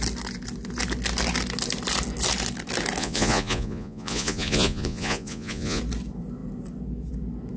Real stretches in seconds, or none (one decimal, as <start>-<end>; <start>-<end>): 0.0-3.0; 5.8-7.6